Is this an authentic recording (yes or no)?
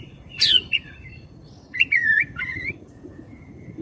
no